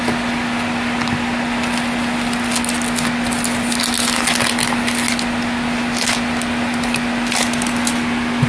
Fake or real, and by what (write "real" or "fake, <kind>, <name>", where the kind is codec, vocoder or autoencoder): real